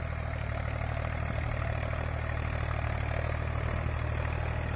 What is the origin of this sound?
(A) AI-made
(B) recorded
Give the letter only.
B